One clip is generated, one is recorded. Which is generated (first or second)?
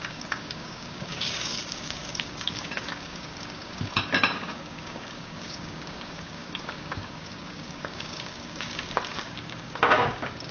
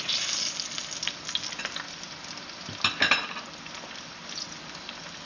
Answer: first